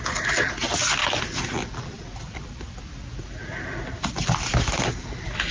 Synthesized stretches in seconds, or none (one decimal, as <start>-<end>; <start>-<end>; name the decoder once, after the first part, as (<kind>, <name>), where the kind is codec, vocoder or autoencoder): none